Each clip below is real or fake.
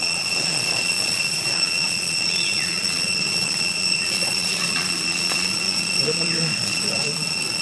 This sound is fake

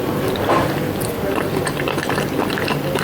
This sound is real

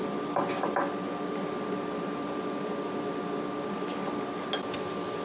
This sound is real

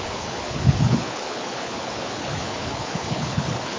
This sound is fake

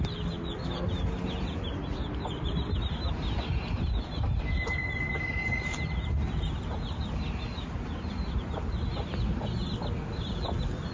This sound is real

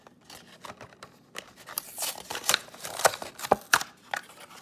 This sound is real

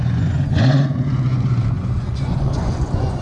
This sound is fake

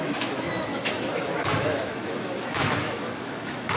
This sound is fake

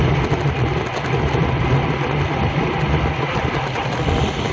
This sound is real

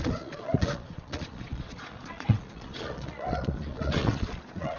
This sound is fake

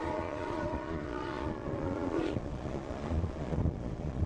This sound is fake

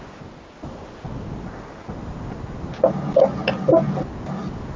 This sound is real